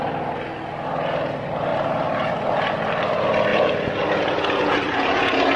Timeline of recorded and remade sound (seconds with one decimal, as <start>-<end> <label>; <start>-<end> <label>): 0.0-3.5 recorded; 3.5-5.6 remade